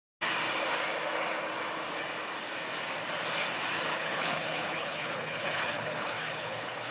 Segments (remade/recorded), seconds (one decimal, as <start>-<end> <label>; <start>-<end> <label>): 0.0-3.9 recorded; 3.9-6.9 remade